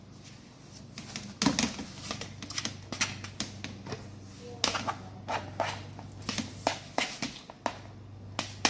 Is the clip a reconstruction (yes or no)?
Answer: no